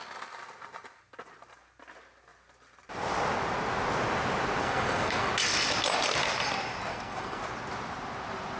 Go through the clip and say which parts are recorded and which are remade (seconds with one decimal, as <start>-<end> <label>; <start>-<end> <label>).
0.0-4.6 recorded; 4.6-5.3 remade; 5.3-6.9 recorded; 6.9-7.4 remade; 7.4-8.6 recorded